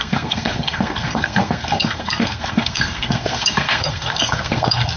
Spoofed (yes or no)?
yes